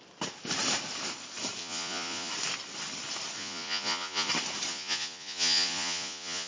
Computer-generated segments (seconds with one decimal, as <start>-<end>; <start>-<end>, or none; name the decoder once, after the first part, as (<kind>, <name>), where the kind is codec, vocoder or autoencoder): 1.6-2.3 (vocoder, Vocos); 3.4-4.3; 4.7-6.5